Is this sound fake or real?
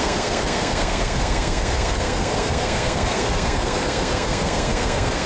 fake